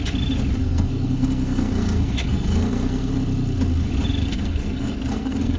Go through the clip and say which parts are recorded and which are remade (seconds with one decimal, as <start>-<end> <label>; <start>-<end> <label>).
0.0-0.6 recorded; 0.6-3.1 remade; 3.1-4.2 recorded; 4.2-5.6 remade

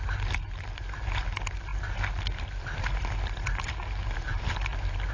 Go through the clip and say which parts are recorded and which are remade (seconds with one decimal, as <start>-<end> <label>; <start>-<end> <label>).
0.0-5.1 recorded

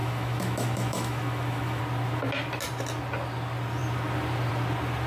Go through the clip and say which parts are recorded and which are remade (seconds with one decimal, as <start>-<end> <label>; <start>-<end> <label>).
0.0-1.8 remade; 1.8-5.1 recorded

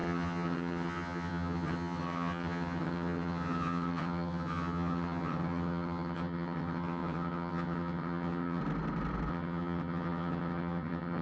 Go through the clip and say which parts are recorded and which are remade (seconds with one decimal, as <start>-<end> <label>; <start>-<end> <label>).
0.0-8.6 remade; 8.6-9.3 recorded; 9.3-11.2 remade

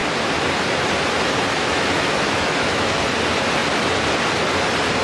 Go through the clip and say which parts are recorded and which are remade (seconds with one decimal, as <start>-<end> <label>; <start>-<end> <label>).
0.0-1.6 recorded; 1.6-3.0 remade; 3.0-5.0 recorded

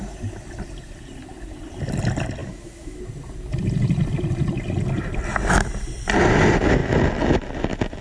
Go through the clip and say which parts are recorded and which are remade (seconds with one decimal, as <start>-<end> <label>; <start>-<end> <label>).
0.0-2.4 recorded; 2.4-3.0 remade; 3.0-8.0 recorded

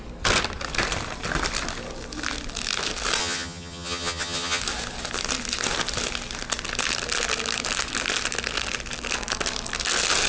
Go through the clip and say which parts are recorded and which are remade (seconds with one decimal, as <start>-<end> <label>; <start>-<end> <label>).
0.0-3.2 recorded; 3.2-4.6 remade; 4.6-10.3 recorded

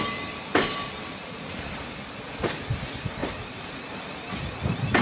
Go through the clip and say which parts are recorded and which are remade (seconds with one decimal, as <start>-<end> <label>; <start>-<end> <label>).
0.0-1.2 recorded; 1.2-1.7 remade; 1.7-5.0 recorded